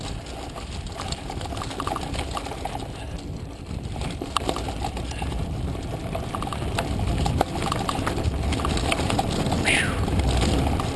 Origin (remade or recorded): recorded